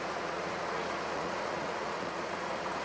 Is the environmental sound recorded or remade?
remade